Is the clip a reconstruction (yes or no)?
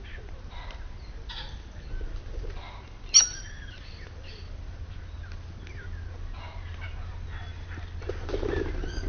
no